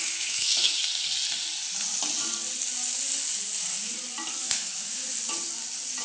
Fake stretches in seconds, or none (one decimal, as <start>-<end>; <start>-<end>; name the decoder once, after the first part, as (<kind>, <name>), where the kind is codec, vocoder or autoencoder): 0.0-0.8 (autoencoder, DAC-VAE); 4.4-5.0

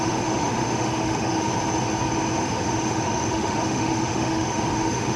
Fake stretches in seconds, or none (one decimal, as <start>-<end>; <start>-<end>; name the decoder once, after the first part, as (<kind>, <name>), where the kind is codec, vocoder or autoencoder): 0.0-1.5 (autoencoder, DAC-VAE); 2.4-5.2

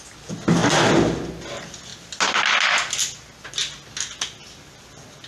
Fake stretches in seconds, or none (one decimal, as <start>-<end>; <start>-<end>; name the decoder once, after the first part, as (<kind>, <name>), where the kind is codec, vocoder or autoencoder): none

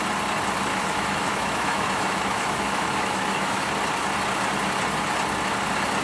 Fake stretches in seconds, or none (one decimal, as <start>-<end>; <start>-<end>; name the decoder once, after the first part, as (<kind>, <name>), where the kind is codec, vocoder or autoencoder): 0.7-3.7 (autoencoder, DAC-VAE)

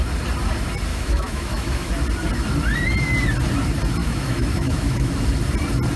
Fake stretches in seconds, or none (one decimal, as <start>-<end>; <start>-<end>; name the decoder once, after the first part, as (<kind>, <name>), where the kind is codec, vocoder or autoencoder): 0.9-1.9 (autoencoder, DAC-VAE); 4.0-5.1

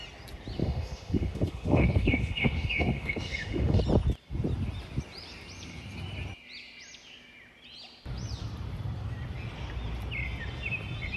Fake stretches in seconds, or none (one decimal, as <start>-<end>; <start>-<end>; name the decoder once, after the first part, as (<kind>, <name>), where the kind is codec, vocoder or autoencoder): 0.6-3.8 (autoencoder, DAC-VAE)

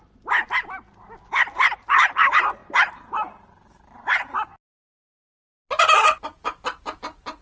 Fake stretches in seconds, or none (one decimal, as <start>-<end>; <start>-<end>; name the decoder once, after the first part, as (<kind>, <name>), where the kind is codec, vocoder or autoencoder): none